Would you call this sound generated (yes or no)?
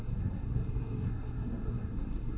yes